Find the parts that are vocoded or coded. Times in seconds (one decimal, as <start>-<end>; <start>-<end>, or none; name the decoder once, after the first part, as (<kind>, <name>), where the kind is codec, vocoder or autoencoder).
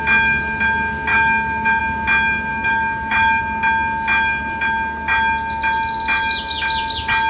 1.1-1.8 (autoencoder, DAC-VAE); 2.5-3.4